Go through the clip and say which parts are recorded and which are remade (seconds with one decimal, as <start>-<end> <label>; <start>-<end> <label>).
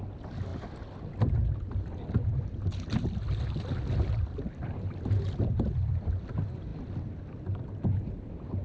0.0-8.6 recorded